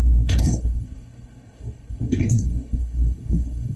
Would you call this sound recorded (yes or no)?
no